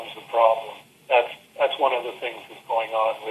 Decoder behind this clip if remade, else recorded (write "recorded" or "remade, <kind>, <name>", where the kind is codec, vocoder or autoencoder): recorded